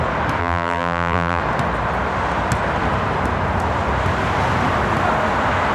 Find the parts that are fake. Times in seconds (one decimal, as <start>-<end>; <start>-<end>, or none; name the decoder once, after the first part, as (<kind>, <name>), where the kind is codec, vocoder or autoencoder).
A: 0.4-1.4 (vocoder, BigVGAN v2)